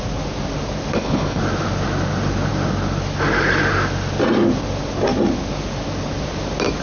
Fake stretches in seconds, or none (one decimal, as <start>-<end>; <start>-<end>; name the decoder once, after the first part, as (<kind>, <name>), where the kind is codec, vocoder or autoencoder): 0.9-1.4 (codec, HILCodec)